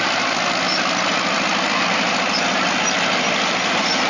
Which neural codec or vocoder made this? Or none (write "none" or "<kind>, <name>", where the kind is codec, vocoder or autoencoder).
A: none